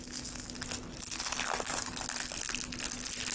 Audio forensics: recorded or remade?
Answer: recorded